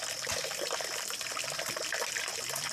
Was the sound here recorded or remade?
recorded